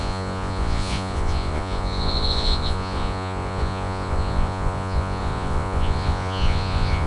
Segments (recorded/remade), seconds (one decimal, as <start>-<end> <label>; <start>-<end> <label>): 0.0-7.1 remade